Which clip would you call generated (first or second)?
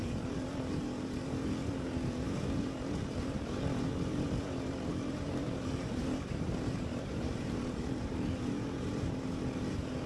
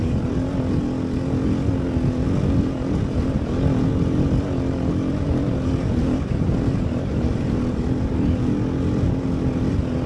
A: first